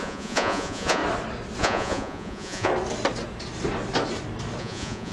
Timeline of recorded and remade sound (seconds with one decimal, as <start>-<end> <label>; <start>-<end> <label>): 0.0-1.0 remade; 1.0-1.6 recorded; 1.6-2.7 remade; 2.7-4.6 recorded; 4.6-5.1 remade